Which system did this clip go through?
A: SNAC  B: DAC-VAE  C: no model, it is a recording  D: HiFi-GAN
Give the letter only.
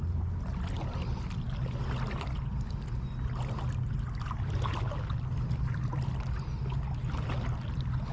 C